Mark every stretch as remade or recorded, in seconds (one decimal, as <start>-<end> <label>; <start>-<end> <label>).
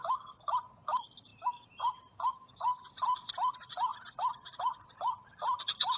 0.0-1.3 recorded; 1.3-3.3 remade; 3.3-6.0 recorded